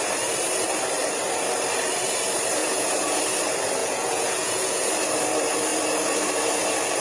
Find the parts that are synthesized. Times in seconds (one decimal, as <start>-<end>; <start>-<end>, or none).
2.6-3.2; 3.8-4.9